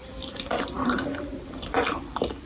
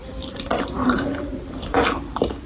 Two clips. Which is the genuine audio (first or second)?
second